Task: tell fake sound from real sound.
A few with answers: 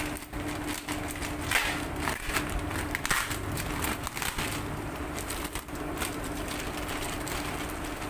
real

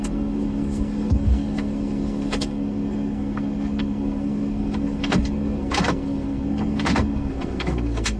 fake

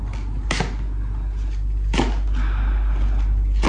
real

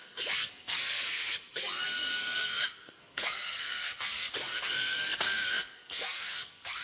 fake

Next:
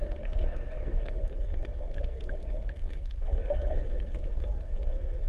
fake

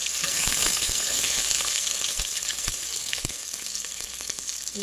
fake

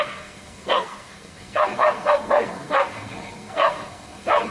fake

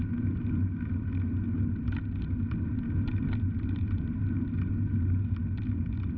real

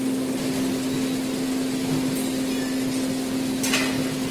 real